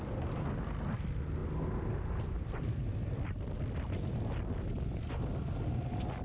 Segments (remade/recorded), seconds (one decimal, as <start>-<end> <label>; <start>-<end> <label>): 0.0-6.2 recorded

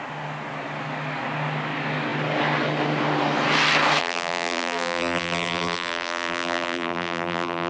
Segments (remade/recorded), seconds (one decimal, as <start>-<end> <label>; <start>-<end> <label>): 0.0-4.0 recorded; 4.0-7.7 remade

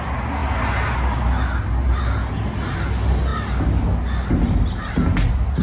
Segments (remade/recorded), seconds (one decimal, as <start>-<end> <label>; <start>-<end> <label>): 0.0-5.6 recorded

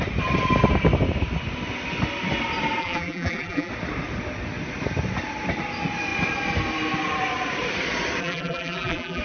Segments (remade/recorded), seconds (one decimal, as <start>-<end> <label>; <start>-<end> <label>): 0.0-2.8 recorded; 2.8-3.7 remade; 3.7-8.2 recorded; 8.2-9.2 remade

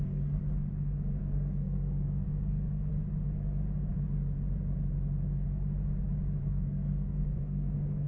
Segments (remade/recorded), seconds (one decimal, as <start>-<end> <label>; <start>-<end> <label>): 0.0-0.4 remade; 0.4-1.2 recorded; 1.2-2.9 remade; 2.9-6.4 recorded; 6.4-8.1 remade

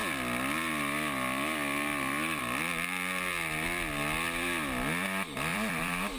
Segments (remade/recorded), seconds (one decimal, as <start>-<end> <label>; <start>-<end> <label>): 0.0-2.4 remade; 2.4-5.5 recorded; 5.5-6.2 remade